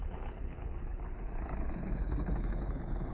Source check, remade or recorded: remade